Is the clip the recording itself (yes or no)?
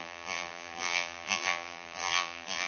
no